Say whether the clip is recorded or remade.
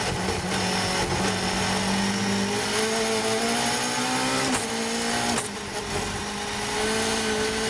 recorded